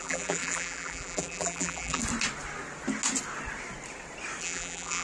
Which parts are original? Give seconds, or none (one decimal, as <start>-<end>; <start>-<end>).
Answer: 2.0-4.4